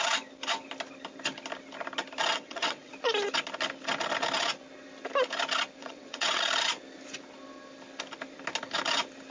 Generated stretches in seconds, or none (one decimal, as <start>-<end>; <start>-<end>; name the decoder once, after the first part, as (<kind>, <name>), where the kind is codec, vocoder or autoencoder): 2.3-2.9 (vocoder, WaveNeXt); 5.8-6.4